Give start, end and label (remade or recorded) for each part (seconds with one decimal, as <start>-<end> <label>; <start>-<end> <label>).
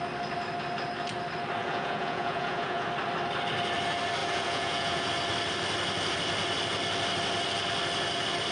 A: 0.0-1.6 recorded; 1.6-2.9 remade; 2.9-4.2 recorded; 4.2-5.1 remade; 5.1-8.5 recorded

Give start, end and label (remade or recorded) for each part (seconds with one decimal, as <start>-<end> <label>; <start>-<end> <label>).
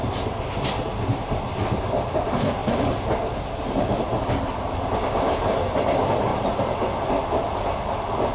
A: 0.0-6.3 recorded; 6.3-7.0 remade; 7.0-8.3 recorded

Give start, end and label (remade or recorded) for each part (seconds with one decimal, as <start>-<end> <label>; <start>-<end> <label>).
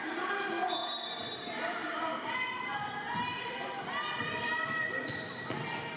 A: 0.0-0.8 recorded; 0.8-1.4 remade; 1.4-1.8 recorded; 1.8-4.9 remade; 4.9-6.0 recorded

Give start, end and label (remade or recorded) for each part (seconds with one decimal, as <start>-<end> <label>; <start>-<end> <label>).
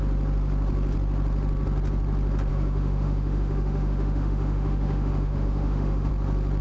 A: 0.0-2.5 recorded; 2.5-6.1 remade; 6.1-6.6 recorded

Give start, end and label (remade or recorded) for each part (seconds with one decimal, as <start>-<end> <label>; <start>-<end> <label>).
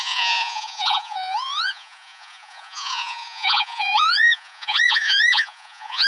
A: 0.0-6.1 remade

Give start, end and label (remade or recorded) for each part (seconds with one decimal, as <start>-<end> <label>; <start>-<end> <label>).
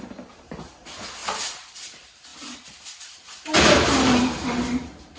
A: 0.0-1.2 remade; 1.2-1.7 recorded; 1.7-5.2 remade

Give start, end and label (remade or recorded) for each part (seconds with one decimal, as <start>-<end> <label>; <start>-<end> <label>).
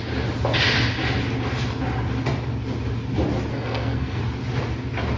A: 0.0-3.5 recorded; 3.5-4.2 remade; 4.2-5.2 recorded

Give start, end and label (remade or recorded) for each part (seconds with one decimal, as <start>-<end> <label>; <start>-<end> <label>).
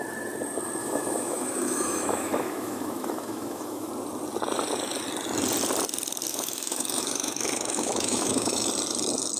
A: 0.0-0.8 recorded; 0.8-3.9 remade; 3.9-6.3 recorded; 6.3-8.7 remade; 8.7-9.4 recorded